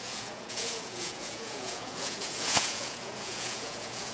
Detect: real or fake fake